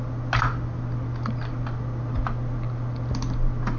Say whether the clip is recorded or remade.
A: recorded